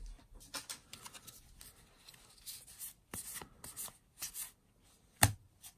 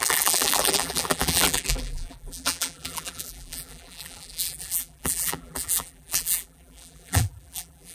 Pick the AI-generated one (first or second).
second